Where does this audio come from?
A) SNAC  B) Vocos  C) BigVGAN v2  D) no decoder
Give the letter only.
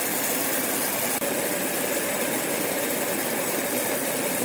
D